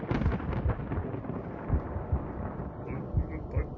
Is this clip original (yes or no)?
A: yes